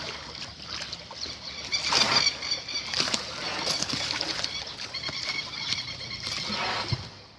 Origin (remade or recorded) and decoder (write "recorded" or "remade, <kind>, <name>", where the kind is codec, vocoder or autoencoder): recorded